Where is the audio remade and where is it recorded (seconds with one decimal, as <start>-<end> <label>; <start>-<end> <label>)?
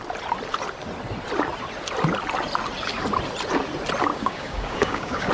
0.0-4.1 recorded; 4.1-5.3 remade